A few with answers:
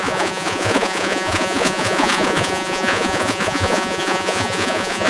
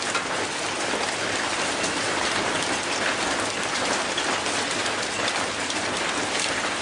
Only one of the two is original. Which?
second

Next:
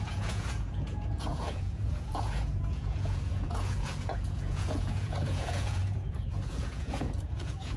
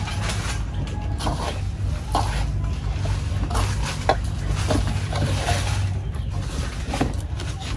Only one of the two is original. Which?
second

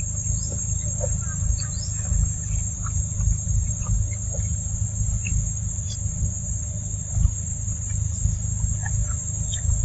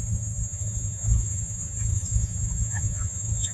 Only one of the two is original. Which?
first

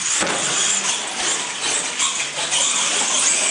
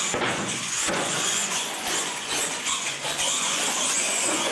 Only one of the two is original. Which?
first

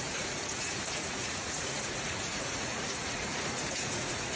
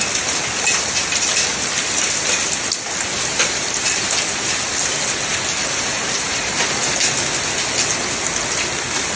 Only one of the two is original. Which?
second